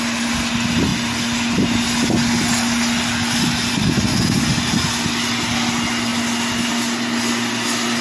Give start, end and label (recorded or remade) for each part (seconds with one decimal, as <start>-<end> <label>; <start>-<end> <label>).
0.0-8.0 recorded